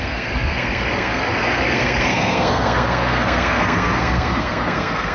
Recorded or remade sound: remade